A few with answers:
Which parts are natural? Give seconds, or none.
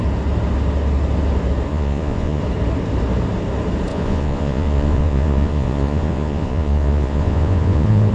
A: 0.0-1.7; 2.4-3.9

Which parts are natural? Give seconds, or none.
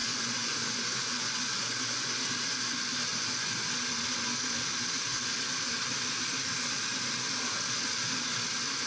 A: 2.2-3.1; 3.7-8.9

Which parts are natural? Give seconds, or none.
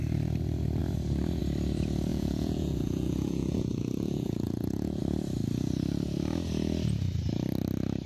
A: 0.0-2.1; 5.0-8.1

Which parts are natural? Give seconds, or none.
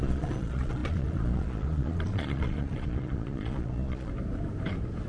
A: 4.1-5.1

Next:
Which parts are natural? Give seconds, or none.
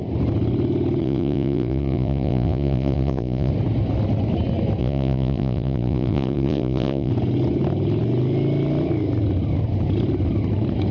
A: 0.0-1.0; 3.5-4.8; 7.1-10.9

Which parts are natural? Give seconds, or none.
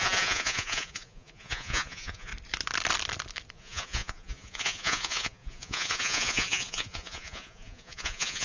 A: 2.3-3.5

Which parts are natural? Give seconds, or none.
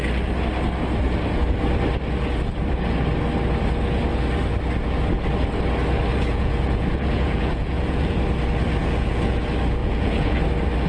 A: 0.0-6.1; 8.2-8.8; 9.4-9.8; 10.4-10.9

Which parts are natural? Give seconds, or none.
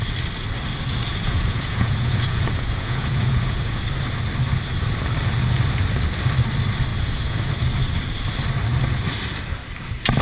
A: 0.0-1.1; 3.8-6.9; 7.5-10.2